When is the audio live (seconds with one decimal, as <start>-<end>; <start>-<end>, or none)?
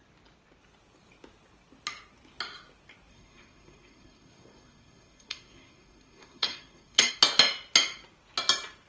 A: 0.0-3.1; 7.1-8.9